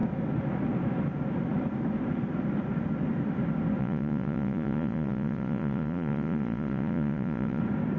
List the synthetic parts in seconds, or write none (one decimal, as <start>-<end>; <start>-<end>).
3.8-7.6